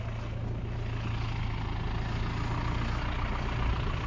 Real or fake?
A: real